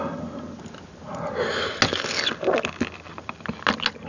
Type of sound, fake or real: real